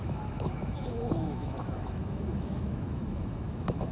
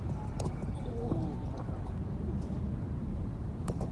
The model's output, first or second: first